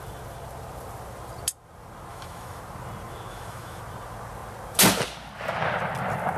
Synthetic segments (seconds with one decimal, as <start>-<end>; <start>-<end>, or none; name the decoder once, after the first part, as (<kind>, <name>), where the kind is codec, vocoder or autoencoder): 2.1-2.6 (autoencoder, DAC-VAE); 3.3-3.8